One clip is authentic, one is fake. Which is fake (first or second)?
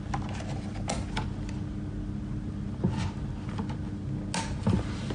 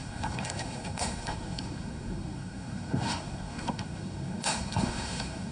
second